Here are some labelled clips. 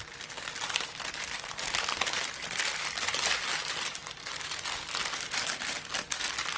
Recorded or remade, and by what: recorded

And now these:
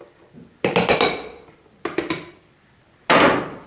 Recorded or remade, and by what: recorded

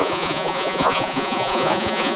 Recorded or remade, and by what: remade, vocoder, Vocos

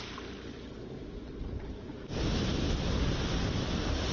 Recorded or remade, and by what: recorded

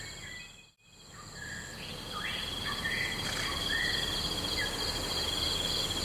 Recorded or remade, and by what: recorded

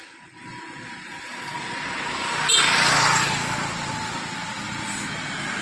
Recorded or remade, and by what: recorded